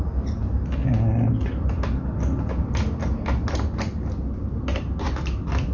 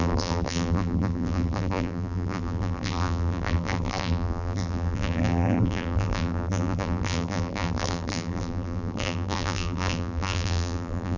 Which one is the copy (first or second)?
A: second